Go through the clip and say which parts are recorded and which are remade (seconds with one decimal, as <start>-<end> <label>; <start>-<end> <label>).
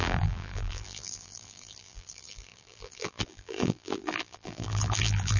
0.0-5.4 remade